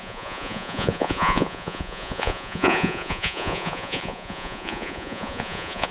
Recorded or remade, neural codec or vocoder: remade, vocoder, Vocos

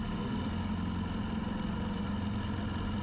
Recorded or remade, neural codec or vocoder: recorded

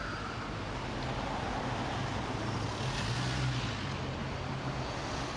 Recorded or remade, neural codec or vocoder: recorded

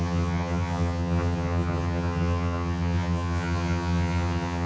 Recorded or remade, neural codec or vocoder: remade, vocoder, HiFi-GAN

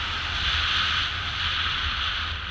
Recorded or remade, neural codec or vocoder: recorded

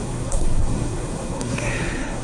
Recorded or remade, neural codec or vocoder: remade, codec, SNAC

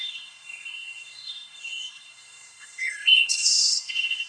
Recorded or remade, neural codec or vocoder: remade, codec, SNAC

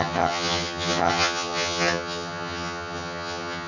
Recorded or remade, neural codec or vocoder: remade, vocoder, HiFi-GAN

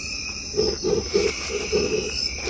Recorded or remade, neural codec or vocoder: recorded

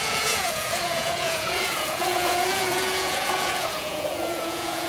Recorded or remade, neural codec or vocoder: remade, vocoder, Vocos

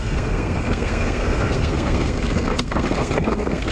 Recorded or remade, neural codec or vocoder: remade, codec, SNAC